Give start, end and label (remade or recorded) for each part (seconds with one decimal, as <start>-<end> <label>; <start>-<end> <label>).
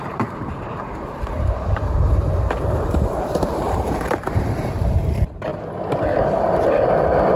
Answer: 0.0-5.5 remade; 5.5-7.4 recorded